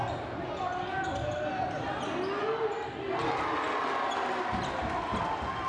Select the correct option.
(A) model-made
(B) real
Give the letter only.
B